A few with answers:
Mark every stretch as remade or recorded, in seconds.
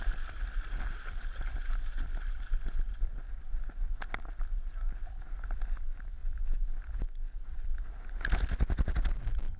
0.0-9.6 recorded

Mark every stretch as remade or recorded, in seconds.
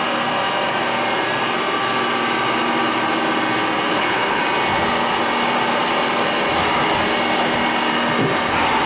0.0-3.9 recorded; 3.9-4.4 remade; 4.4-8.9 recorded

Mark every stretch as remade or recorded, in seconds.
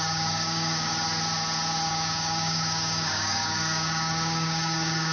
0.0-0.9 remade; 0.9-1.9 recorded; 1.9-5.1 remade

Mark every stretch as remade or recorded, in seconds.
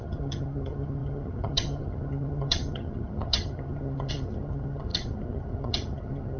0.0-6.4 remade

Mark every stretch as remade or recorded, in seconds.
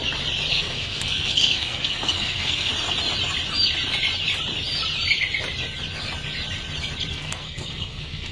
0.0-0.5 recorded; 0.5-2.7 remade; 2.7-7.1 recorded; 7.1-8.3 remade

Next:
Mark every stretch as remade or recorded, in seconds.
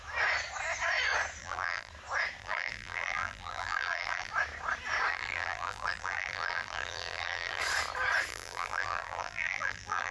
0.0-1.4 recorded; 1.4-1.9 remade; 1.9-2.4 recorded; 2.4-4.3 remade; 4.3-5.1 recorded; 5.1-7.6 remade; 7.6-8.3 recorded; 8.3-10.1 remade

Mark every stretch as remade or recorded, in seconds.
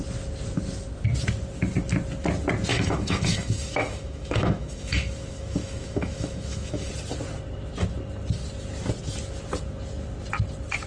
0.0-2.7 recorded; 2.7-6.9 remade; 6.9-10.9 recorded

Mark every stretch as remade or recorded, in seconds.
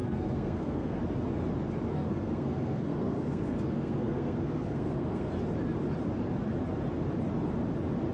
0.0-1.0 remade; 1.0-1.9 recorded; 1.9-5.3 remade; 5.3-8.1 recorded